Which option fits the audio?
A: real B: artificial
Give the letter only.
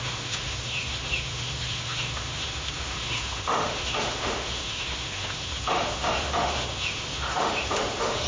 B